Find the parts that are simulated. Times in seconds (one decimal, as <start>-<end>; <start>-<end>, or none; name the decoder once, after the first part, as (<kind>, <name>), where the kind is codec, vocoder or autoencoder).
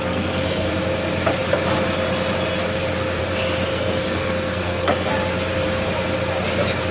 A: 0.0-0.7 (codec, SNAC); 3.7-5.1